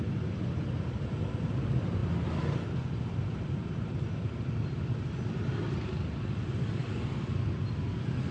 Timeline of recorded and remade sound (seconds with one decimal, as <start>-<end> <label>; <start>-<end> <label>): 0.0-8.3 recorded